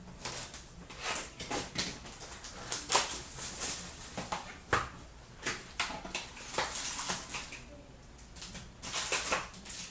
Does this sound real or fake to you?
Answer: real